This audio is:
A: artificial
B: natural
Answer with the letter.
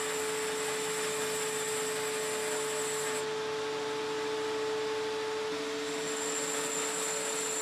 B